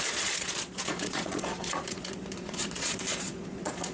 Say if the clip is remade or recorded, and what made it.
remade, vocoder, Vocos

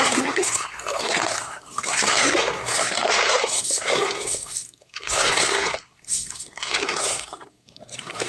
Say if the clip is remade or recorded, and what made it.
remade, codec, SNAC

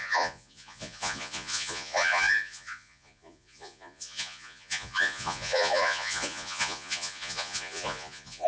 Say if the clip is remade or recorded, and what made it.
remade, vocoder, Vocos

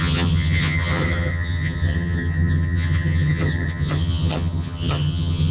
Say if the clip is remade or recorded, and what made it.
remade, vocoder, HiFi-GAN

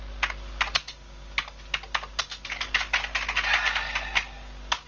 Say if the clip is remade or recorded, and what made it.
recorded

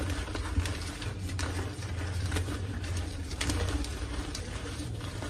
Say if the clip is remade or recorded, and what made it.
remade, vocoder, BigVGAN v2